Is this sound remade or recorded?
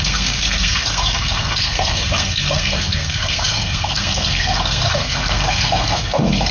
remade